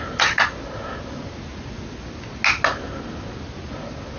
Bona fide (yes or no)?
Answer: yes